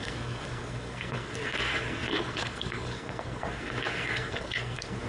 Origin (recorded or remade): remade